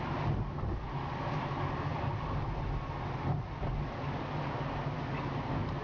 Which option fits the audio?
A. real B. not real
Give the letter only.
A